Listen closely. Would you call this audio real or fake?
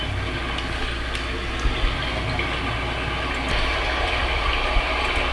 real